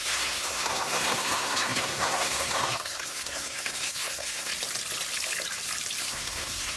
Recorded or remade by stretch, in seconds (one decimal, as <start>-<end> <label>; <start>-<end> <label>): 0.0-4.5 remade; 4.5-6.0 recorded; 6.0-6.8 remade